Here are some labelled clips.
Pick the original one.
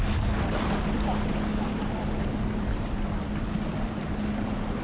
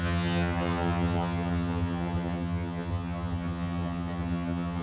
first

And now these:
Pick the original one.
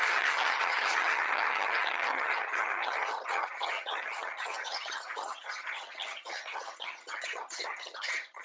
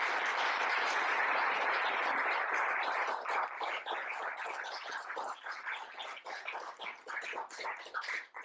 second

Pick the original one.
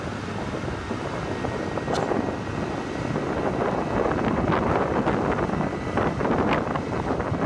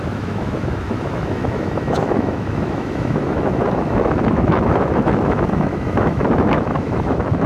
first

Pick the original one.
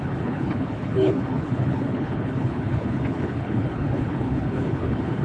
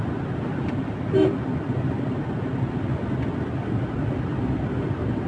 second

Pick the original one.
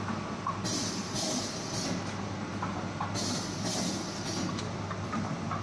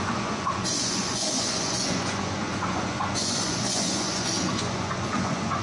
first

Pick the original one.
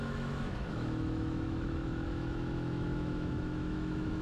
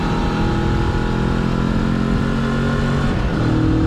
second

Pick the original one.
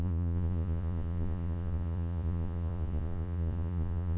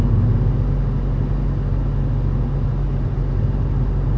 second